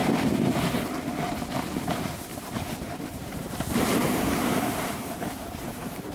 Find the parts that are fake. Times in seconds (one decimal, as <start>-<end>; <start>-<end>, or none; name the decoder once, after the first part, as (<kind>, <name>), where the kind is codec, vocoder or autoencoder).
0.0-1.0 (vocoder, BigVGAN v2); 2.3-6.1